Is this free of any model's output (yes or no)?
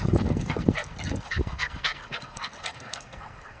no